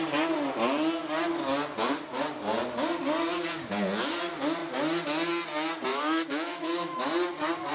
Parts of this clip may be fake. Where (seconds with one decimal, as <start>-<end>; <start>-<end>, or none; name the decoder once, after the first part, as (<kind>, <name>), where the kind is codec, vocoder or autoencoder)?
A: 5.9-7.1 (autoencoder, DAC-VAE)